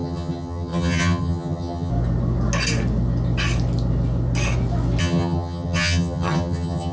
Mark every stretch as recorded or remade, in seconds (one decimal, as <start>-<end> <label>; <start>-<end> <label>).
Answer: 0.0-1.9 remade; 1.9-5.0 recorded; 5.0-6.9 remade